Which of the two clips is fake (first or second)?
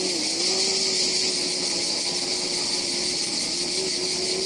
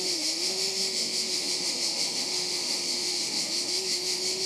second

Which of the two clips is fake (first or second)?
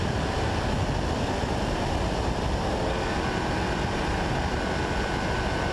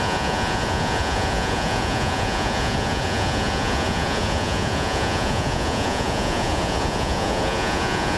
second